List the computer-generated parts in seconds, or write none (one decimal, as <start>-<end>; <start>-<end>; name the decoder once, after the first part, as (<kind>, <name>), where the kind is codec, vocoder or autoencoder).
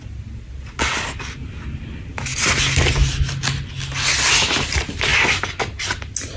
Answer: none